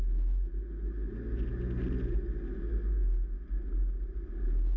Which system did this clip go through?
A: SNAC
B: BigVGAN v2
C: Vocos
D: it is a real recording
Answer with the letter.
D